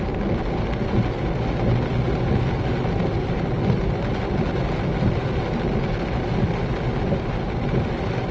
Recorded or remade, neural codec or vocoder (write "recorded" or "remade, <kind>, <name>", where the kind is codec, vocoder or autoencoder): recorded